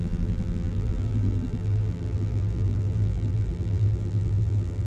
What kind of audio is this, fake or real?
fake